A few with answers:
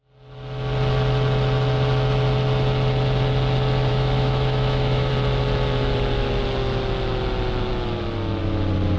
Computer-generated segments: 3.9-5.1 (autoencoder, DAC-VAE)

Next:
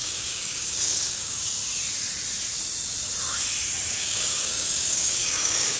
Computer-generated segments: 0.0-1.6 (codec, DAC); 3.9-5.8

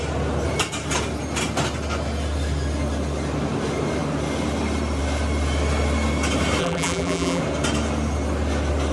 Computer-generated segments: 6.6-7.4 (vocoder, BigVGAN v2)

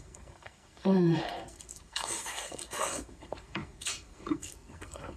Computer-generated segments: 0.0-5.2 (codec, SNAC)

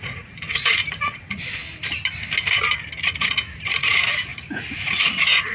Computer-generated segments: 0.0-1.6 (vocoder, Vocos); 3.0-5.5